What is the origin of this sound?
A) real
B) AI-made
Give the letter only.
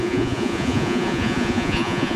B